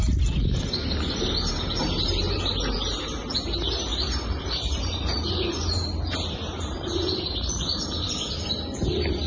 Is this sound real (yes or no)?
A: yes